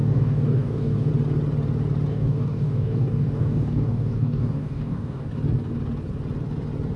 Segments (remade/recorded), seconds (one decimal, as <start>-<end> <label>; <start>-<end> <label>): 0.0-1.1 remade; 1.1-2.1 recorded; 2.1-5.3 remade; 5.3-7.0 recorded